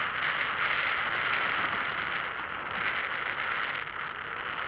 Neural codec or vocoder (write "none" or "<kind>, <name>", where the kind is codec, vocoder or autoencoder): none